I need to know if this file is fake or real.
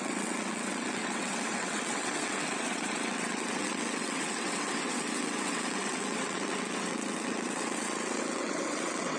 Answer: fake